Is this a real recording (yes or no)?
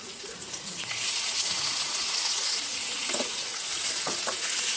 no